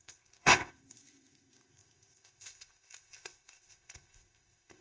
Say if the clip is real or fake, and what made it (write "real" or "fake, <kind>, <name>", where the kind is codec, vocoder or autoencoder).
fake, codec, ZipCodec